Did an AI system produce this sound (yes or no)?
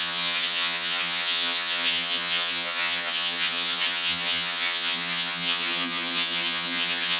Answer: yes